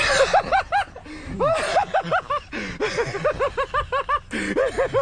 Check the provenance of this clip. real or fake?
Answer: real